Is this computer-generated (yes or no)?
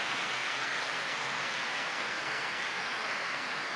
yes